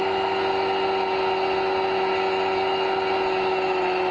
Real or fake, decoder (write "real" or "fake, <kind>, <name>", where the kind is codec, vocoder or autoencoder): real